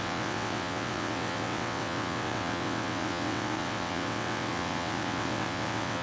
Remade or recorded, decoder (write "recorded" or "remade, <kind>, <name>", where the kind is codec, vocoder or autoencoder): remade, vocoder, WaveNeXt